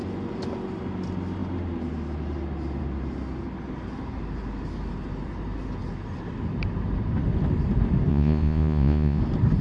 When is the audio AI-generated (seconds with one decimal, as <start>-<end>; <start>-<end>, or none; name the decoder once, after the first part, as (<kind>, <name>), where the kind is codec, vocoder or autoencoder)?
8.1-9.2 (vocoder, Vocos)